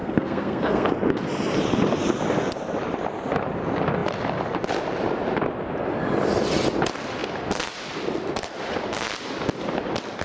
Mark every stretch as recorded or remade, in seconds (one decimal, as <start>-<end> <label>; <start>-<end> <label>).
0.0-0.9 remade; 0.9-10.2 recorded